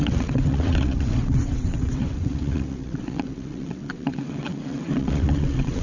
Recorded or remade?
remade